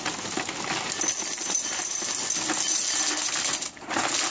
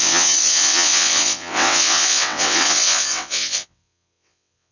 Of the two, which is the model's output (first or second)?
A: second